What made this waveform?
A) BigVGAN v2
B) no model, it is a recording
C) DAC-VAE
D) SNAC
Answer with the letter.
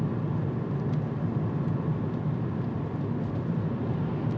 B